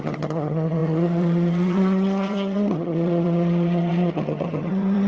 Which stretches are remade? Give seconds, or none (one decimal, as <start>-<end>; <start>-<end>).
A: 0.0-5.1